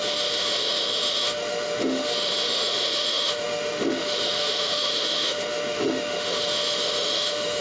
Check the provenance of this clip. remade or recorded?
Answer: remade